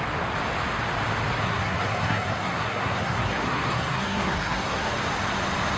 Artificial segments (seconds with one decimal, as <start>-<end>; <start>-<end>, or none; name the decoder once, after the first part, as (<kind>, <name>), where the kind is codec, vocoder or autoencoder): 1.4-4.9 (codec, SNAC)